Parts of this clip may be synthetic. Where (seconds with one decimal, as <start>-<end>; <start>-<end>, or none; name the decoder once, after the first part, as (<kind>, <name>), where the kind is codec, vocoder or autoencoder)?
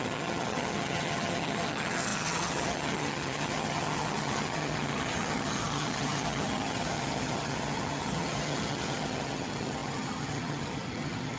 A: 0.0-11.4 (vocoder, HiFi-GAN)